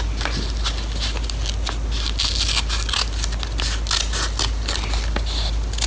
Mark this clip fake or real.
real